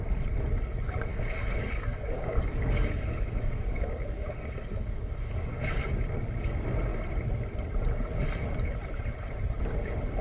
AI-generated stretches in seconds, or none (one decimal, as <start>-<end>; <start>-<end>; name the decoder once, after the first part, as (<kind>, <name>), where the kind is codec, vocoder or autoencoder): 1.1-5.9 (codec, DAC)